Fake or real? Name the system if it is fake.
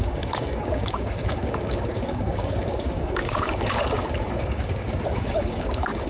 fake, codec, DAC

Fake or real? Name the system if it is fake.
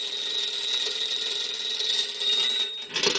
real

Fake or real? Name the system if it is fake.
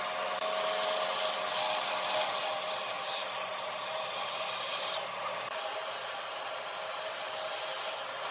real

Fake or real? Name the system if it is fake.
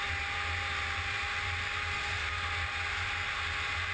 real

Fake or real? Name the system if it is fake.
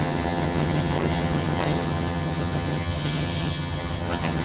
fake, vocoder, HiFi-GAN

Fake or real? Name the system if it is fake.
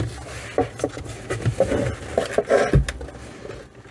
real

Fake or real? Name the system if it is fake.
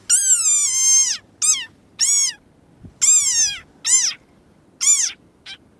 real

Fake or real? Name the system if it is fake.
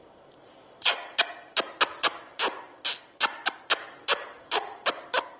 fake, vocoder, BigVGAN v2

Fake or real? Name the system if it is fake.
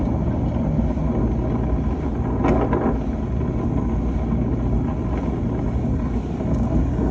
real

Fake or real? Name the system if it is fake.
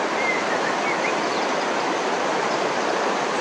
real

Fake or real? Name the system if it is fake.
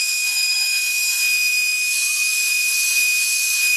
fake, autoencoder, DAC-VAE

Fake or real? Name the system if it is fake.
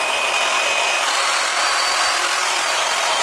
fake, vocoder, BigVGAN v2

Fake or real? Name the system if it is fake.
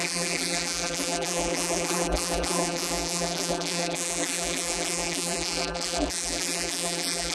fake, vocoder, BigVGAN v2